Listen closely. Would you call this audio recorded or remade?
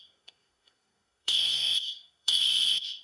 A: remade